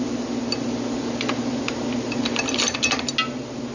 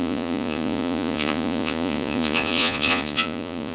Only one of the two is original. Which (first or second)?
first